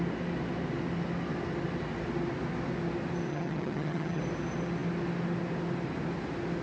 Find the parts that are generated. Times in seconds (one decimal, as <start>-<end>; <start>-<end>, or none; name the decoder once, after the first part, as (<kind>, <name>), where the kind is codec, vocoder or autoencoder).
3.3-4.2 (vocoder, HiFi-GAN)